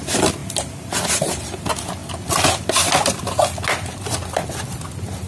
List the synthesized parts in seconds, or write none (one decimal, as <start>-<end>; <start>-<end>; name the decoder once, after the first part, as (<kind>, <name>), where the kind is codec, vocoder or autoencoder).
0.4-1.6 (vocoder, BigVGAN v2); 2.0-5.3